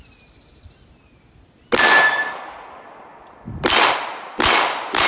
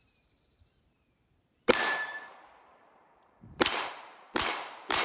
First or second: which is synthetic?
second